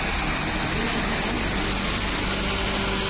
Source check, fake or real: real